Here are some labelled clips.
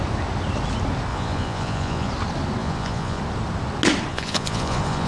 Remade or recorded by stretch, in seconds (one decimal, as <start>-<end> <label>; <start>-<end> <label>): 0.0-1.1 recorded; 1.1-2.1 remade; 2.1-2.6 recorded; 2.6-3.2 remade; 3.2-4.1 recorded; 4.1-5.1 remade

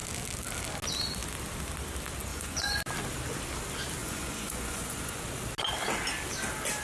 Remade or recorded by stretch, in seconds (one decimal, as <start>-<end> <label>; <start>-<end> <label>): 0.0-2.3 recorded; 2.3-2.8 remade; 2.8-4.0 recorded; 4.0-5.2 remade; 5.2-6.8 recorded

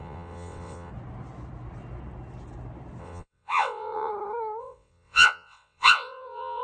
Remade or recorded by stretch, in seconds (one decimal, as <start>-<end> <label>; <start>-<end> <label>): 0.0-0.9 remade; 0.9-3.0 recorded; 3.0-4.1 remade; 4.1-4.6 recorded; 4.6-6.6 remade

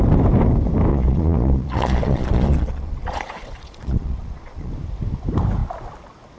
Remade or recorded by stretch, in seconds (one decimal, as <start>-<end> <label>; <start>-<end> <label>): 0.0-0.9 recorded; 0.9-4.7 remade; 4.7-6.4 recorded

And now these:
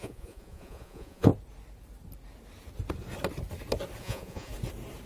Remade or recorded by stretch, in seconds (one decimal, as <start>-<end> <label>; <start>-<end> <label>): 0.0-1.3 remade; 1.3-4.0 recorded; 4.0-4.5 remade; 4.5-5.1 recorded